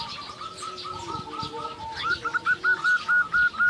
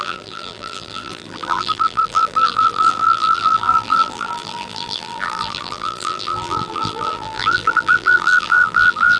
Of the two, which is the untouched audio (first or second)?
first